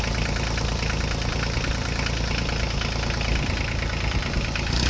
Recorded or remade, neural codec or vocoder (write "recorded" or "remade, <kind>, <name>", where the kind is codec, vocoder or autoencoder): recorded